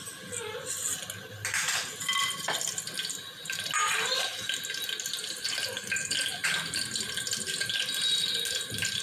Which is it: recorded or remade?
recorded